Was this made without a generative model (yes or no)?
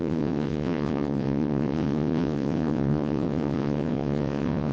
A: no